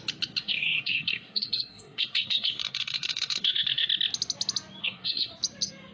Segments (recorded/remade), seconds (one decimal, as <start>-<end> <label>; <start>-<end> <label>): 0.0-0.4 recorded; 0.4-3.9 remade; 3.9-4.8 recorded; 4.8-5.3 remade; 5.3-5.9 recorded

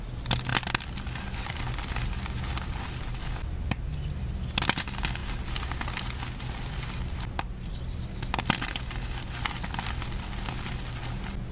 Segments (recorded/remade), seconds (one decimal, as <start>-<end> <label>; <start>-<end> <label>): 0.0-11.5 recorded

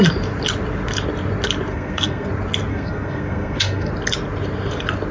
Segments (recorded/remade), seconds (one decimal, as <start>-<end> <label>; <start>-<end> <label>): 0.0-1.7 recorded; 1.7-2.3 remade; 2.3-2.7 recorded; 2.7-3.9 remade; 3.9-5.1 recorded

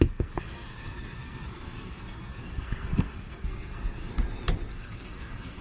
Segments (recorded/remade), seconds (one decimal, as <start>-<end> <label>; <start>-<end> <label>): 0.0-4.1 remade; 4.1-4.7 recorded; 4.7-5.6 remade

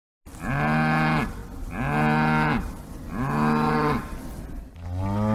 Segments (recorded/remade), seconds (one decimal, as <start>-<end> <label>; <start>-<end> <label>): 0.0-5.3 recorded

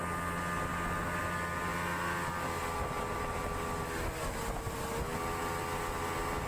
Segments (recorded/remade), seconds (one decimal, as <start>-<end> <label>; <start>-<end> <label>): 0.0-6.5 recorded